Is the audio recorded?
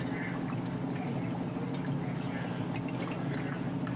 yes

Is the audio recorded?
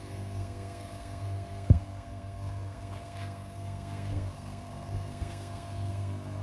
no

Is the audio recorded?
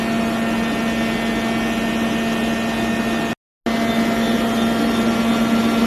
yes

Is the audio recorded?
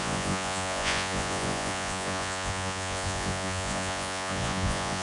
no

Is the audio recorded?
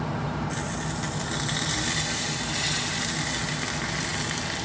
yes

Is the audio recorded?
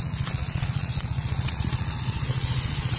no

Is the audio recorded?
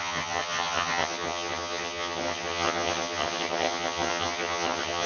no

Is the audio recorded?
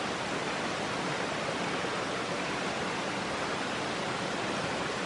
yes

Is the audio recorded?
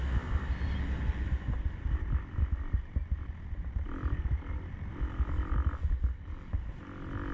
yes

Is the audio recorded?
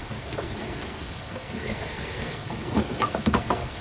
no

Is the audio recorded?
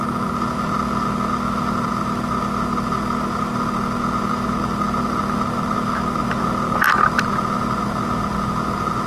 yes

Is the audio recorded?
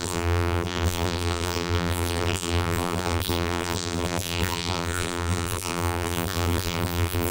no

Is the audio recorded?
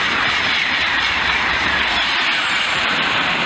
no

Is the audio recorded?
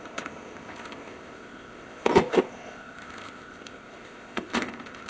no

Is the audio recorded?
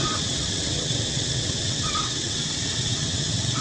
no